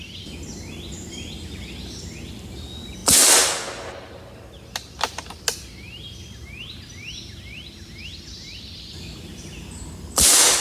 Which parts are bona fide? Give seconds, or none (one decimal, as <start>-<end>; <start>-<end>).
0.0-10.6

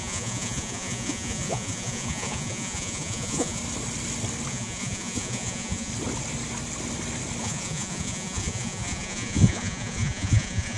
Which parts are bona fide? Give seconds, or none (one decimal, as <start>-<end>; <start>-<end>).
3.6-4.5; 5.9-7.4